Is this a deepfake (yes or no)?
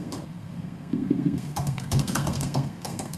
yes